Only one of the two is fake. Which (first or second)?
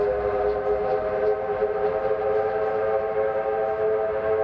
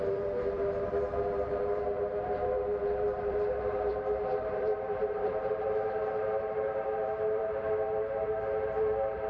second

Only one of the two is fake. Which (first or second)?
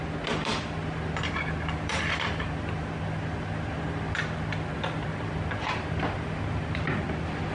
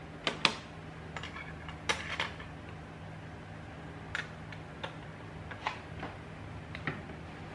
first